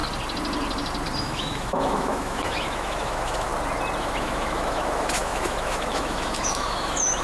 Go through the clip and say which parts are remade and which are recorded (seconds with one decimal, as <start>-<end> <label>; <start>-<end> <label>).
0.0-1.2 recorded; 1.2-3.5 remade; 3.5-4.0 recorded; 4.0-7.2 remade